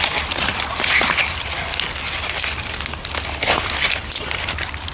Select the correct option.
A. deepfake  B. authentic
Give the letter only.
B